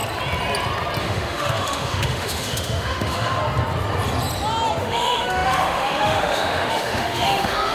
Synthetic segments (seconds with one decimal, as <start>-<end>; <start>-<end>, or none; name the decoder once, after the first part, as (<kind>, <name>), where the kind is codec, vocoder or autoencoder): 1.0-3.4 (autoencoder, DAC-VAE); 4.8-7.7

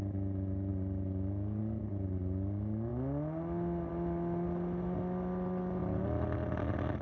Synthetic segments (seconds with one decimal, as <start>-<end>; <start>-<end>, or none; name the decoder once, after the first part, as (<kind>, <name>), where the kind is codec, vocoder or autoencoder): none

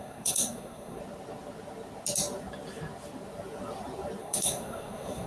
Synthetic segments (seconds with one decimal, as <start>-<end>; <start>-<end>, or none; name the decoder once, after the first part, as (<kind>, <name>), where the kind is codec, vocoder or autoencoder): 0.0-1.0 (codec, SNAC); 4.2-5.3

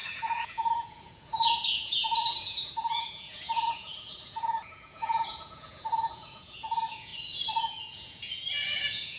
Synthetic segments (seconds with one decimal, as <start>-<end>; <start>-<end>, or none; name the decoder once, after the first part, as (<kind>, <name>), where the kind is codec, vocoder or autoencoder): 0.0-7.1 (vocoder, Vocos); 7.6-9.2

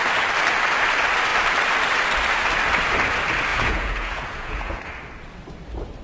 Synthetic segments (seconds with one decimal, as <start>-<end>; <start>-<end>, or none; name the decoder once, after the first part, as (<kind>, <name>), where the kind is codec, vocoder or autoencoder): 3.5-4.8 (vocoder, Vocos)